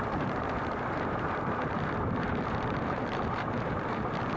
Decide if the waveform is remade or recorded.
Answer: remade